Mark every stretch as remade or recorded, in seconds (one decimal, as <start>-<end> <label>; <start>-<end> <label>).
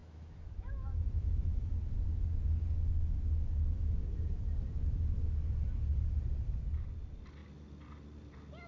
0.0-1.8 remade; 1.8-8.7 recorded